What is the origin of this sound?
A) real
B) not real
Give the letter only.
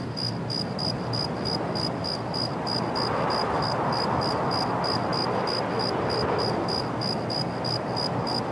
A